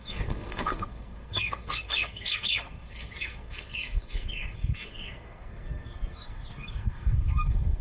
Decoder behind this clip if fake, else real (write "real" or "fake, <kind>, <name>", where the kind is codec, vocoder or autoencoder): fake, codec, SNAC